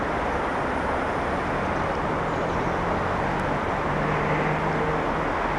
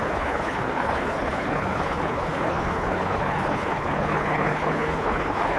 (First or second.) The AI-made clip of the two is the second